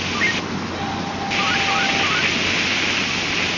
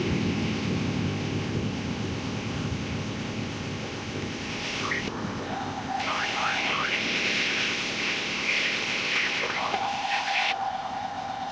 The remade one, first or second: second